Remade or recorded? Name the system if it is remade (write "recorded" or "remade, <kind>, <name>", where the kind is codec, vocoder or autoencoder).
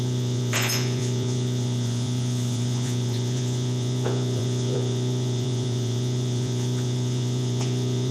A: remade, vocoder, Vocos